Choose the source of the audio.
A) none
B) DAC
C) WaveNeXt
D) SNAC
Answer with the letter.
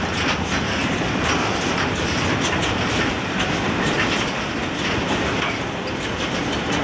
A